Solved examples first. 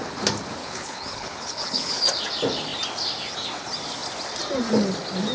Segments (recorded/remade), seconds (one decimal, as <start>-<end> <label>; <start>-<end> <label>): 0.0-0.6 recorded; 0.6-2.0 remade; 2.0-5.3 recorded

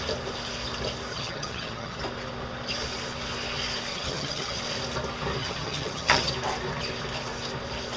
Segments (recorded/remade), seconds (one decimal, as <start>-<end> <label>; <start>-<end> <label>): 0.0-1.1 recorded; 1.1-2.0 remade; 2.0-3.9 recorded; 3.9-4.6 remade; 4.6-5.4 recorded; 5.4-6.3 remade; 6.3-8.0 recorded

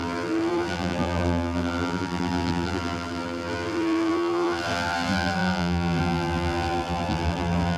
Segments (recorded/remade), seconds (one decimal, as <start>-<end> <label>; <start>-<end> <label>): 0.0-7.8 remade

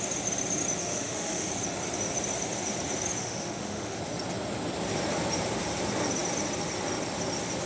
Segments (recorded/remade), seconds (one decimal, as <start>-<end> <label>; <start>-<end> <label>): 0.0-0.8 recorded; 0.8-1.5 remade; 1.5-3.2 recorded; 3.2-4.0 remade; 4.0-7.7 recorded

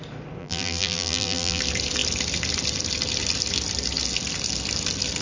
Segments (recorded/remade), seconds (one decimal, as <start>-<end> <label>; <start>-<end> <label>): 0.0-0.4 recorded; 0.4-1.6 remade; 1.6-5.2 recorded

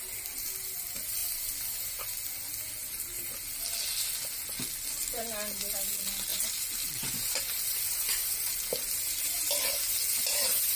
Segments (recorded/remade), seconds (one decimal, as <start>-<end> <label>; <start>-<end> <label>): 0.0-1.2 recorded; 1.2-2.0 remade; 2.0-6.3 recorded; 6.3-9.9 remade; 9.9-10.8 recorded

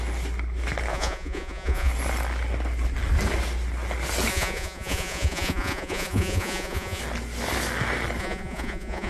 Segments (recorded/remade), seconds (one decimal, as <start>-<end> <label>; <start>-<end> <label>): 0.0-0.9 recorded; 0.9-1.9 remade; 1.9-4.3 recorded; 4.3-7.0 remade; 7.0-8.2 recorded; 8.2-9.1 remade